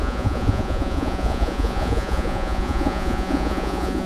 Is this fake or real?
fake